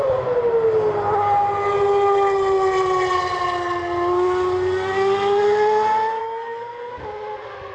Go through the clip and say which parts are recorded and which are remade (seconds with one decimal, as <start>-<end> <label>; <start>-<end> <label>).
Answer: 0.0-6.2 recorded; 6.2-6.9 remade; 6.9-7.7 recorded